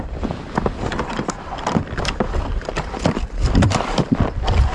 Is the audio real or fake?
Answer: fake